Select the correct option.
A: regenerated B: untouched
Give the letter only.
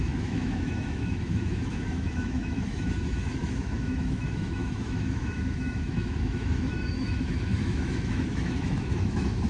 A